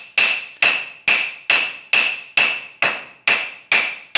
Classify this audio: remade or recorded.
recorded